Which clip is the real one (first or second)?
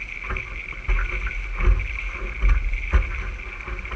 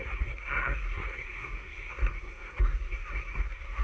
first